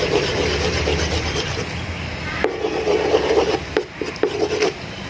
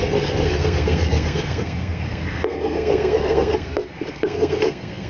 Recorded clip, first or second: first